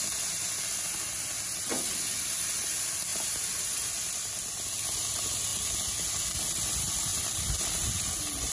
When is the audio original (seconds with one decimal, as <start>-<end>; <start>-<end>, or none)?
0.0-3.1; 3.9-8.5